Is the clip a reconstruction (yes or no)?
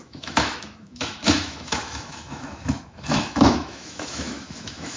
yes